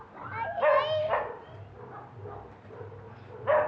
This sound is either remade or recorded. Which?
recorded